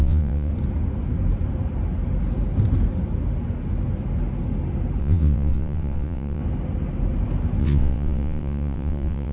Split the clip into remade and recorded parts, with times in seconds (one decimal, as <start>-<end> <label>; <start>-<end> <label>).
0.0-0.5 remade; 0.5-5.0 recorded; 5.0-6.4 remade; 6.4-7.6 recorded; 7.6-9.3 remade